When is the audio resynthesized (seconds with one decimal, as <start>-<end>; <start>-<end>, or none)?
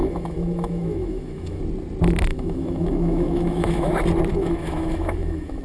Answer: 0.0-1.6; 2.3-3.9; 4.3-5.6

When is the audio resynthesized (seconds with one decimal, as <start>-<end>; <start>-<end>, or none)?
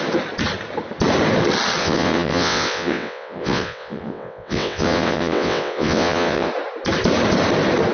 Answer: 1.8-6.5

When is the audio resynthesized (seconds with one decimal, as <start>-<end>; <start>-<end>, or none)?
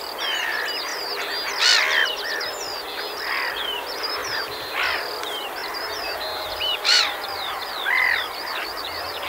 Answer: 4.2-4.7; 5.6-7.7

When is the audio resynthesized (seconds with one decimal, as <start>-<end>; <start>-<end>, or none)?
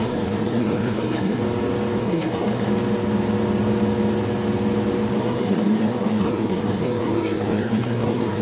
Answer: 0.0-1.4; 2.0-2.7; 5.2-8.4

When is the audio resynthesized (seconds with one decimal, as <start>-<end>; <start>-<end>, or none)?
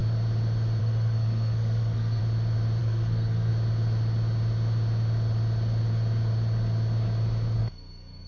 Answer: 0.8-2.2; 2.8-3.5; 7.6-8.3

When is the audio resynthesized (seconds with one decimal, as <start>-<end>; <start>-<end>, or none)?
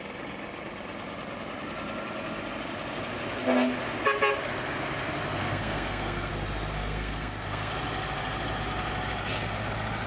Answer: 5.4-6.3; 6.8-7.7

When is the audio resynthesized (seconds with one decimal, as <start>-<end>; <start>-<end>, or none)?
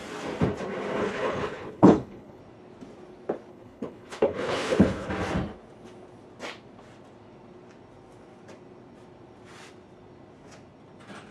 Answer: 1.0-2.4; 3.5-5.1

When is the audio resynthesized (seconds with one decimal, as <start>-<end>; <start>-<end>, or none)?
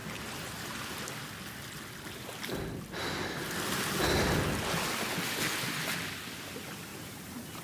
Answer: 6.9-7.6